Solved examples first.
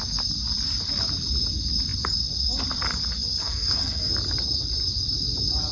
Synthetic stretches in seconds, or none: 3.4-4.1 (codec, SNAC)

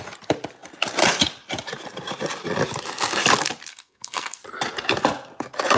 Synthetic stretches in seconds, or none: 3.7-4.4 (codec, SNAC)

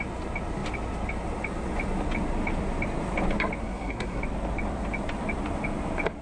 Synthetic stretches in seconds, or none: 3.6-4.2 (codec, SNAC)

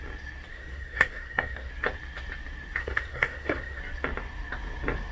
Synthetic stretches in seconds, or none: 0.5-1.7 (codec, SNAC); 2.8-3.8

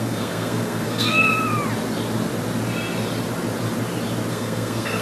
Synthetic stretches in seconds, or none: 0.0-1.3 (codec, SNAC); 4.3-5.0

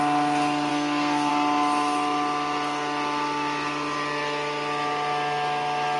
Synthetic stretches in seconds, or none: 0.7-1.3 (codec, SNAC)

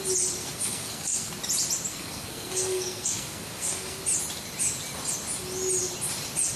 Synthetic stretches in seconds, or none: 0.4-1.3 (codec, SNAC); 1.9-4.0

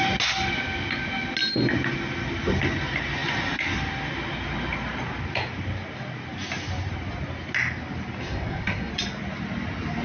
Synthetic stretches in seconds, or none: 8.2-8.9 (codec, SNAC)